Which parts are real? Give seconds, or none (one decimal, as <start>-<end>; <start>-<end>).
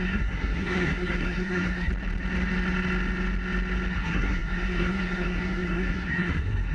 1.9-3.9